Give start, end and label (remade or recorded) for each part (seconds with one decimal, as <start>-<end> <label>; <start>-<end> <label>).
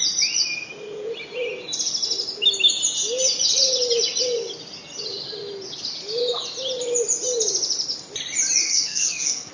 0.0-8.6 recorded; 8.6-9.5 remade